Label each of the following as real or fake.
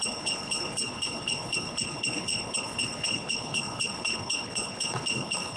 fake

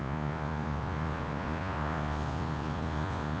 fake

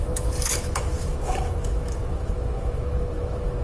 fake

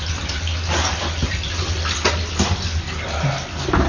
real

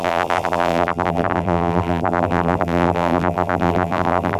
fake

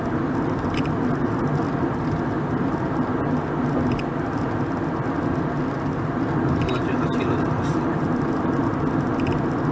real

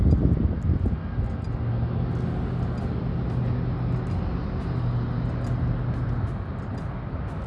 real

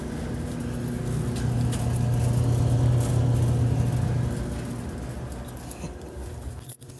real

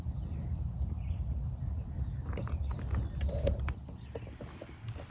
real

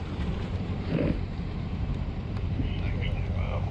fake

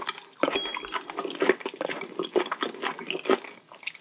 real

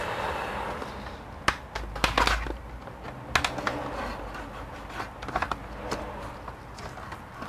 real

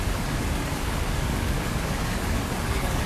fake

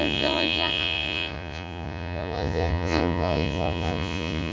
fake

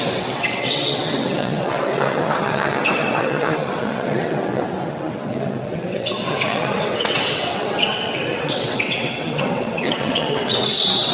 fake